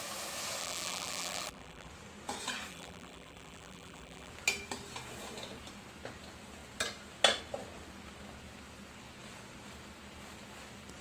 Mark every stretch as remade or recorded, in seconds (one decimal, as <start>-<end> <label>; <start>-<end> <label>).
0.0-0.6 recorded; 0.6-1.9 remade; 1.9-2.7 recorded; 2.7-4.3 remade; 4.3-11.0 recorded